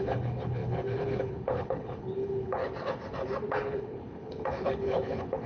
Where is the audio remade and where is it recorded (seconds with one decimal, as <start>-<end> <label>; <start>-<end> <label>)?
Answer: 0.0-2.6 remade; 2.6-3.5 recorded; 3.5-5.5 remade